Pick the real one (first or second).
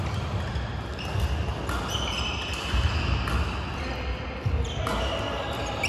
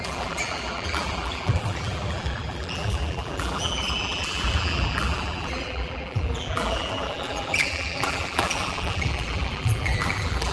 first